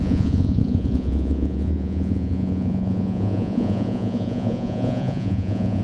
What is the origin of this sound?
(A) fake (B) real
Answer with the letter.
A